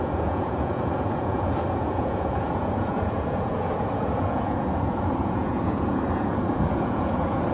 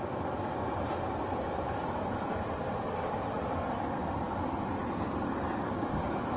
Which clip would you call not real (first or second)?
first